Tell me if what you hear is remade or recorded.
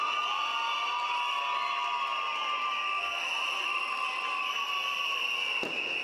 recorded